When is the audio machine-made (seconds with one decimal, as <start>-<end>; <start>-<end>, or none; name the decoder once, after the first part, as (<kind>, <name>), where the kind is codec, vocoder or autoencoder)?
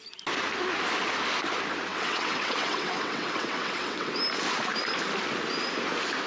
1.9-4.2 (vocoder, WaveNeXt)